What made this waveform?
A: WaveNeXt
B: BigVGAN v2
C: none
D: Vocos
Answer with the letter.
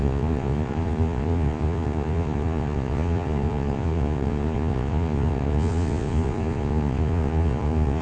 D